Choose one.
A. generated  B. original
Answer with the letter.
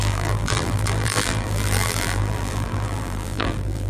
A